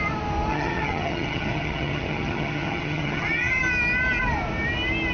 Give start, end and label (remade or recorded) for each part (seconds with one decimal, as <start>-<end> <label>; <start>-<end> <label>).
0.0-0.5 recorded; 0.5-3.6 remade; 3.6-5.1 recorded